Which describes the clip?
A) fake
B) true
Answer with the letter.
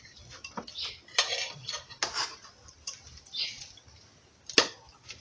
B